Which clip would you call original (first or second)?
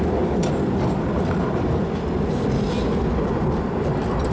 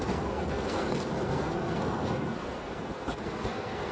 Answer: first